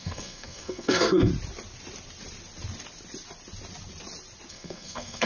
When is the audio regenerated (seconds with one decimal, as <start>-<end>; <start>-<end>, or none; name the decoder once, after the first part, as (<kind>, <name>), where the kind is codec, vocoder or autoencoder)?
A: 0.0-1.3 (codec, SNAC); 4.5-5.3